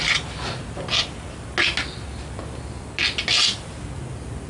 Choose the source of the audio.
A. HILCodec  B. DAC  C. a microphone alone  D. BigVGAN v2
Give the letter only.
C